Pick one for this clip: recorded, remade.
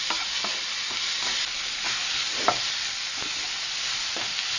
recorded